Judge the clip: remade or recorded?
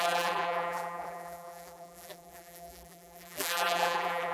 remade